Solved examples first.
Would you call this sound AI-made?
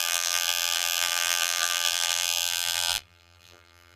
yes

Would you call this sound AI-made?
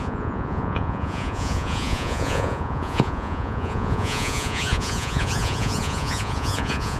yes